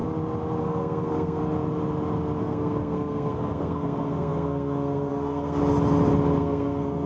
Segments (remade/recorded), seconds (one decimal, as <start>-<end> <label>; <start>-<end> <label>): 0.0-0.6 recorded; 0.6-1.4 remade; 1.4-2.4 recorded; 2.4-5.6 remade; 5.6-6.4 recorded; 6.4-7.1 remade